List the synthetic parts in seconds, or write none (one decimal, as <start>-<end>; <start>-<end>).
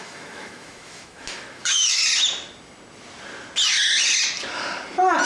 0.0-2.0